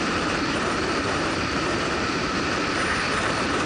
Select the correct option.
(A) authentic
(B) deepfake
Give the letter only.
B